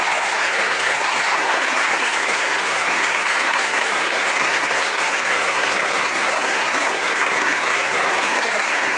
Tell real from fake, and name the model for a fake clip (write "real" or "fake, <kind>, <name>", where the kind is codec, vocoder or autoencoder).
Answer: fake, codec, SNAC